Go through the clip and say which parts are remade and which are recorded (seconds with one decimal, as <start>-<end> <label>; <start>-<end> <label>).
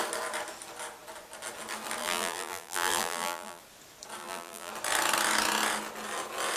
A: 0.0-2.0 recorded; 2.0-3.6 remade; 3.6-4.2 recorded; 4.2-4.7 remade; 4.7-6.6 recorded